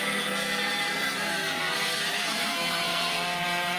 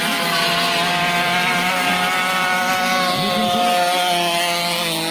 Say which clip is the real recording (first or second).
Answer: second